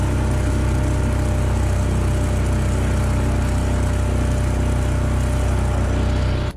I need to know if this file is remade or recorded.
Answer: recorded